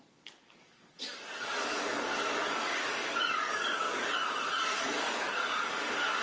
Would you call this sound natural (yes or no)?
no